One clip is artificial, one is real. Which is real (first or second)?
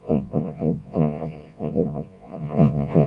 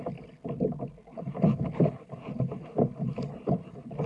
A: second